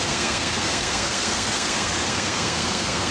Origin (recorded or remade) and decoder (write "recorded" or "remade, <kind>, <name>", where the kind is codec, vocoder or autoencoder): remade, codec, SNAC